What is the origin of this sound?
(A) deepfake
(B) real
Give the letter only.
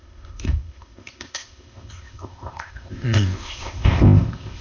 A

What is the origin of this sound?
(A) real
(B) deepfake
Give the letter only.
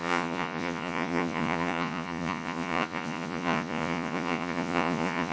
B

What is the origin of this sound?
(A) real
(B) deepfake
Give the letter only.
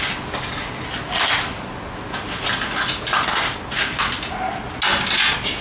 A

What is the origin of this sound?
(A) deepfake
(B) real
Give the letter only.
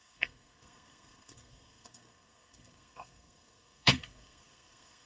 A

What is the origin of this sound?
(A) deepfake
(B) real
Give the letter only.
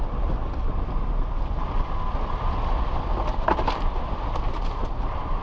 B